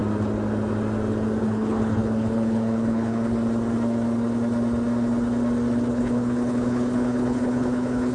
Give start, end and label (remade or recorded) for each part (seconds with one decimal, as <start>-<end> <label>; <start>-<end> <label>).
0.0-1.4 recorded; 1.4-3.3 remade; 3.3-5.9 recorded; 5.9-8.1 remade

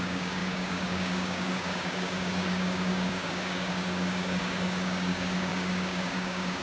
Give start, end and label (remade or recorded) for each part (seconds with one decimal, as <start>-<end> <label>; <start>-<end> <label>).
0.0-6.6 remade

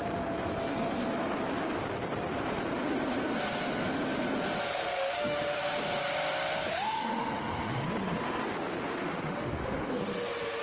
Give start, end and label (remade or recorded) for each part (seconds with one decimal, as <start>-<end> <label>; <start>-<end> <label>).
0.0-4.7 recorded; 4.7-5.6 remade; 5.6-6.7 recorded; 6.7-7.8 remade; 7.8-8.9 recorded; 8.9-10.0 remade; 10.0-10.6 recorded

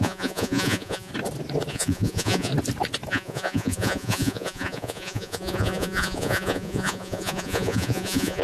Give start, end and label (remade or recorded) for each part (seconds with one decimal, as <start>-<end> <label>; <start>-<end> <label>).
0.0-1.1 remade; 1.1-1.7 recorded; 1.7-2.5 remade; 2.5-3.1 recorded; 3.1-8.4 remade

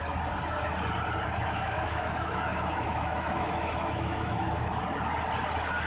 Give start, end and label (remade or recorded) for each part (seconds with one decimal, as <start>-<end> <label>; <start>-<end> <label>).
0.0-1.4 recorded; 1.4-4.8 remade; 4.8-5.9 recorded

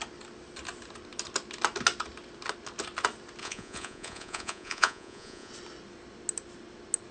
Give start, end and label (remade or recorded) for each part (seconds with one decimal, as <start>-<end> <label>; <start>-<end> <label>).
0.0-3.4 recorded; 3.4-5.5 remade; 5.5-7.1 recorded